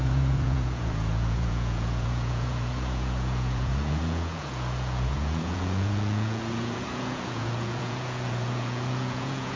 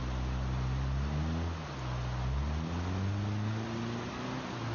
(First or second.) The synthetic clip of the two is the first